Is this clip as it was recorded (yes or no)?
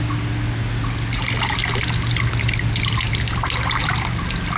yes